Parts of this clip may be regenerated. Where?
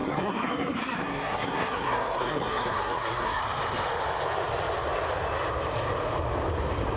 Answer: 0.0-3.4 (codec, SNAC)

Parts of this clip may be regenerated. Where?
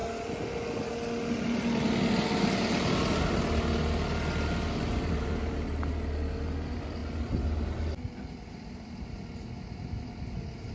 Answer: none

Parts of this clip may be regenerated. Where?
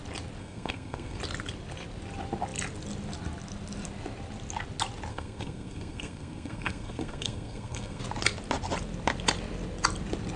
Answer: 0.4-1.2 (codec, SNAC); 5.1-8.0